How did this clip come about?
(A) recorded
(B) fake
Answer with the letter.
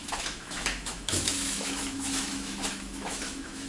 B